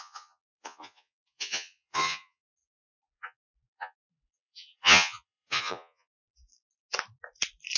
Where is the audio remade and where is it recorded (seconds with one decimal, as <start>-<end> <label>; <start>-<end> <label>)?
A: 0.0-6.5 remade; 6.5-7.8 recorded